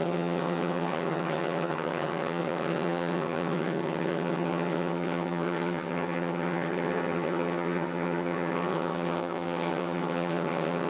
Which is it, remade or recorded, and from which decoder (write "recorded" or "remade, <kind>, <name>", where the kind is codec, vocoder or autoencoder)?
remade, vocoder, HiFi-GAN